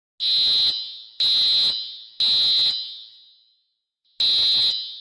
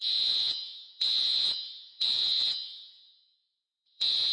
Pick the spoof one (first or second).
second